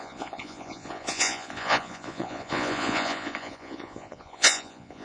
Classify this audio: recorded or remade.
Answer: remade